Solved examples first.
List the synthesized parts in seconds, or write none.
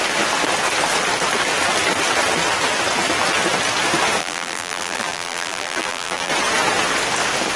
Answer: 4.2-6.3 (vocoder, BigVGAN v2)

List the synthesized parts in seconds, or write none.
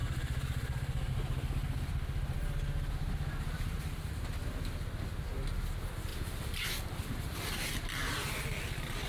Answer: 0.0-1.1 (vocoder, BigVGAN v2); 1.6-4.2; 6.1-8.1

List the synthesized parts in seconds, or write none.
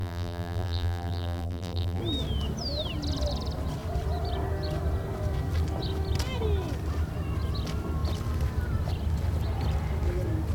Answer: 0.0-2.0 (vocoder, BigVGAN v2)